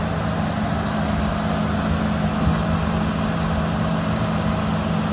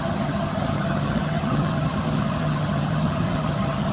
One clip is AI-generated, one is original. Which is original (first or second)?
first